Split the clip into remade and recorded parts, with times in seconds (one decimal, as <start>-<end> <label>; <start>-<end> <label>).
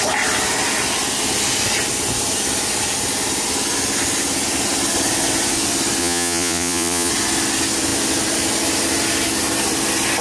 0.0-6.0 recorded; 6.0-7.1 remade; 7.1-10.2 recorded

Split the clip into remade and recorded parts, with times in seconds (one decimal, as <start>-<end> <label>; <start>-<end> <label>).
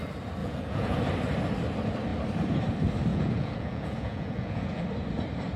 0.0-0.4 recorded; 0.4-1.0 remade; 1.0-3.1 recorded; 3.1-4.8 remade; 4.8-5.6 recorded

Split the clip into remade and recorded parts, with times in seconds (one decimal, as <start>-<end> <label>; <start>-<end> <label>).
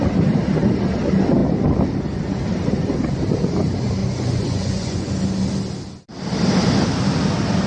0.0-4.0 recorded; 4.0-5.1 remade; 5.1-7.7 recorded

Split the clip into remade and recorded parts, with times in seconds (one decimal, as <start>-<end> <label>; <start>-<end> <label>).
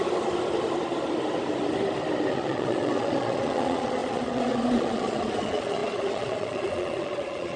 0.0-2.3 recorded; 2.3-7.6 remade